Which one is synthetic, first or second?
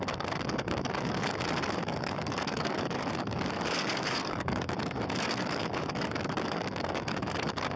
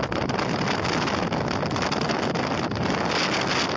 first